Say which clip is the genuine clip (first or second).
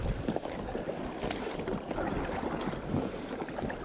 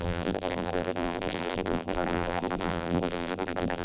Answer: first